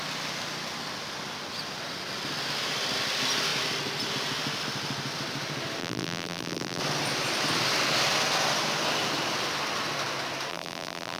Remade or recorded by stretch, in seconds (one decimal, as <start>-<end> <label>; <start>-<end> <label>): 0.0-5.8 recorded; 5.8-6.8 remade; 6.8-10.5 recorded; 10.5-11.2 remade